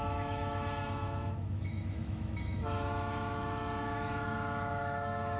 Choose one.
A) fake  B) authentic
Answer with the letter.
A